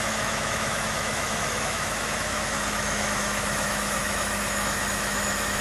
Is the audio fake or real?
fake